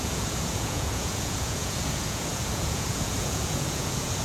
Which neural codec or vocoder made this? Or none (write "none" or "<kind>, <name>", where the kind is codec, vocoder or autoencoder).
vocoder, Vocos